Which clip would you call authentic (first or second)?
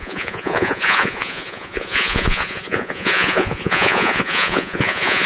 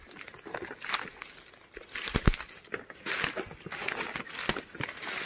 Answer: second